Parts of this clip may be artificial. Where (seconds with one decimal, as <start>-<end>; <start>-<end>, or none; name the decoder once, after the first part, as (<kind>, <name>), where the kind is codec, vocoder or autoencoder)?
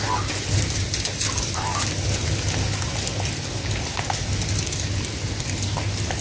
none